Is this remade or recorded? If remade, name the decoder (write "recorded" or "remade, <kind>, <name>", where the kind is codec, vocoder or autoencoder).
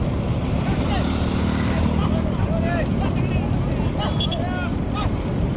recorded